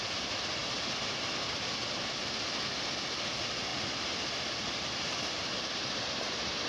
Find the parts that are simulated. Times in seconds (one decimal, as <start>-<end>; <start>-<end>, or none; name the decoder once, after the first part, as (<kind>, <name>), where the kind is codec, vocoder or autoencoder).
3.7-6.3 (vocoder, BigVGAN v2)